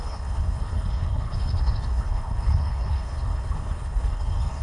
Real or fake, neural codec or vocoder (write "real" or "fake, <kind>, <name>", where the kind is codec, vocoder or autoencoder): fake, codec, HILCodec